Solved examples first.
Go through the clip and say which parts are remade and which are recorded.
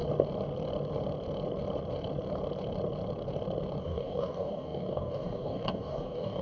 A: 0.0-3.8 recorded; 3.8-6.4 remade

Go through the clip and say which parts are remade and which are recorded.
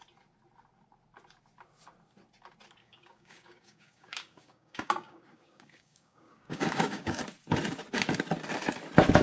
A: 0.0-2.8 recorded; 2.8-7.2 remade; 7.2-9.2 recorded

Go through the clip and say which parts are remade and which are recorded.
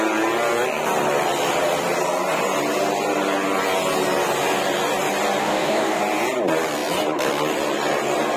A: 0.0-5.4 recorded; 5.4-6.0 remade; 6.0-8.4 recorded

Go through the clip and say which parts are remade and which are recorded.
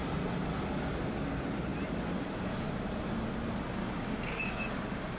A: 0.0-3.8 recorded; 3.8-5.2 remade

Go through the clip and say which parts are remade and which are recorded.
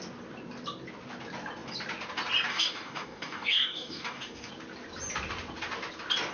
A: 0.0-2.5 recorded; 2.5-4.5 remade; 4.5-6.3 recorded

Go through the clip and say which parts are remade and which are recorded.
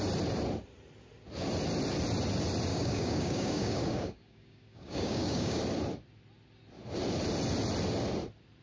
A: 0.0-2.7 recorded; 2.7-5.6 remade; 5.6-8.6 recorded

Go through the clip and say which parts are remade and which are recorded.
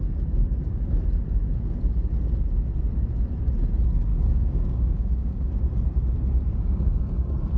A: 0.0-4.1 recorded; 4.1-5.5 remade; 5.5-6.5 recorded; 6.5-7.0 remade; 7.0-7.6 recorded